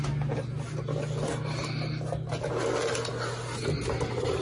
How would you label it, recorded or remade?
recorded